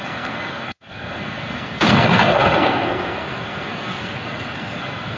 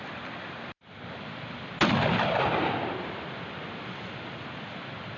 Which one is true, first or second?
second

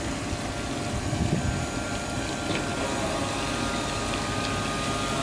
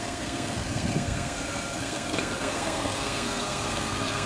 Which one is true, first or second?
first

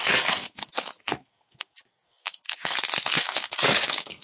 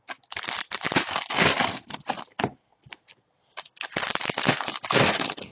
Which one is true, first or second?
second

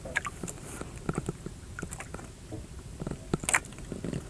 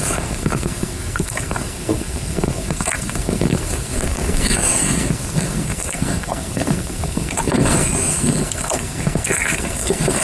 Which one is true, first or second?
first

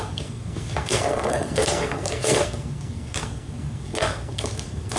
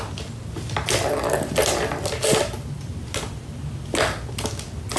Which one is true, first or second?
second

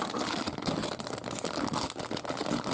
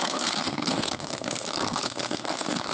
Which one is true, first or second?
first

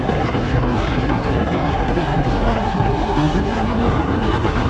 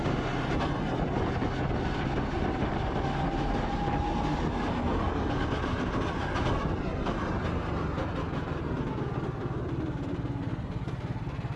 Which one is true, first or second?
second